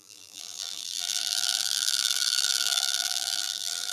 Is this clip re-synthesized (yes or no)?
yes